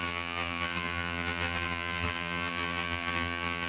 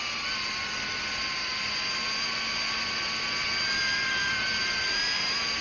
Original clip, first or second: second